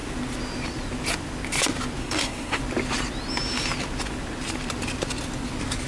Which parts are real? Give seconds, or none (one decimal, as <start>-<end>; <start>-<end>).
0.0-2.0; 2.6-5.9